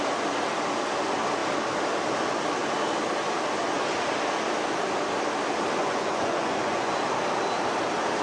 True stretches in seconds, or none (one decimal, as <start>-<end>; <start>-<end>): 0.0-5.8; 7.0-8.2